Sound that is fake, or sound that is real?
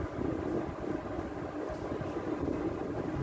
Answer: real